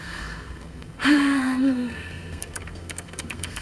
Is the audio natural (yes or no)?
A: no